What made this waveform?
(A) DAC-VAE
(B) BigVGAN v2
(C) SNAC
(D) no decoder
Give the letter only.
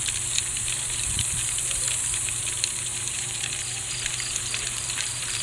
B